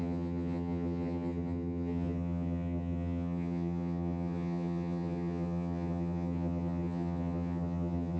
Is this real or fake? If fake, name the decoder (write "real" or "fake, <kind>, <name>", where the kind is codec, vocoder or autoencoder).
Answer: fake, vocoder, HiFi-GAN